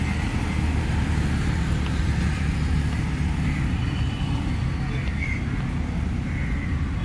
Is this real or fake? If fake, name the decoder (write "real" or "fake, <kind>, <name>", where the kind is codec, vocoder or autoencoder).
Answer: real